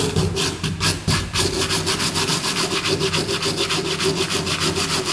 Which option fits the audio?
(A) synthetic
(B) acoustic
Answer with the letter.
B